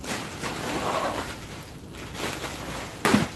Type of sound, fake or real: real